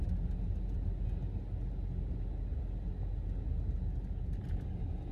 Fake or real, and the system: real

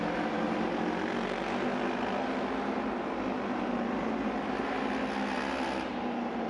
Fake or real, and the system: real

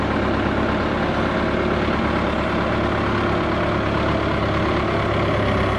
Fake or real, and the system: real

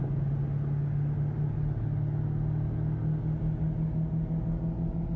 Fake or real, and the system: real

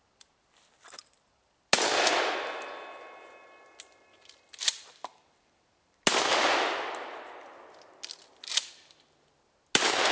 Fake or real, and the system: real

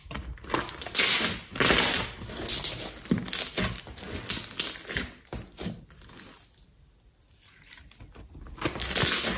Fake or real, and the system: real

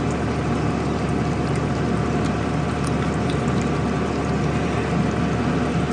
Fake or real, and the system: real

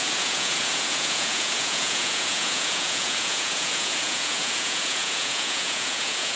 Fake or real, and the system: fake, vocoder, Vocos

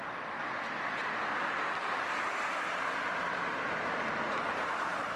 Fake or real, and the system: real